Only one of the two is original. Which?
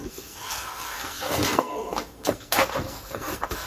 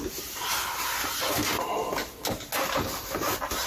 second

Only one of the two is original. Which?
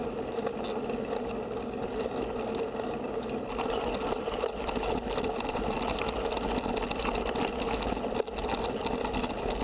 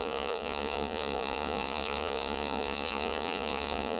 first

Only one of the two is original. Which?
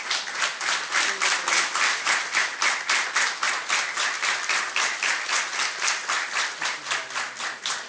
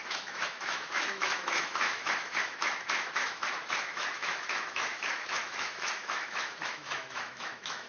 first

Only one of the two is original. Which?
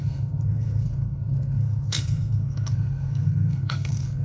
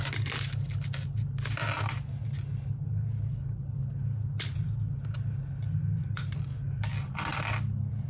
second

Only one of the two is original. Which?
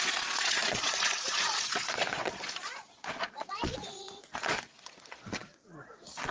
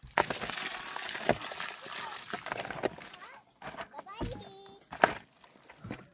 second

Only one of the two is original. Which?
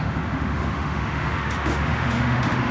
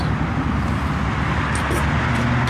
second